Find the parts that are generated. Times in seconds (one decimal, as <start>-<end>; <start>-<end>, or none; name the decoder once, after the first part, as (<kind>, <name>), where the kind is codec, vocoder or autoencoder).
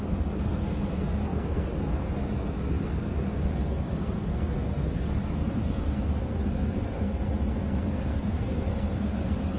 0.0-9.6 (codec, SNAC)